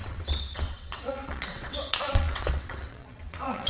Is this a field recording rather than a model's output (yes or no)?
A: no